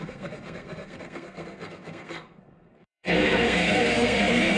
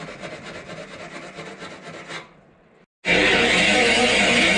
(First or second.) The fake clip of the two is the first